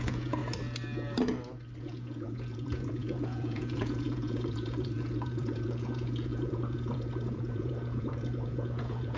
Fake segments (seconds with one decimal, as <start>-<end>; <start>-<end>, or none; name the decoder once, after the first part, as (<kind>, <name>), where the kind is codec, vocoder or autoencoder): 0.0-0.4 (vocoder, Vocos); 1.8-9.2